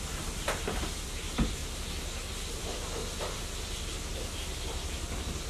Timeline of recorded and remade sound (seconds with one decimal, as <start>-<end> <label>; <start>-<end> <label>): 0.0-1.6 remade; 1.6-2.3 recorded; 2.3-5.5 remade